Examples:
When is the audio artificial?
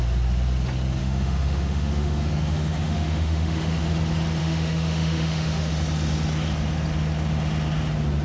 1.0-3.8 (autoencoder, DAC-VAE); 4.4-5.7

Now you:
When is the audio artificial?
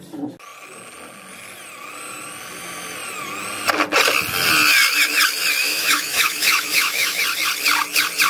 5.6-7.2 (autoencoder, DAC-VAE)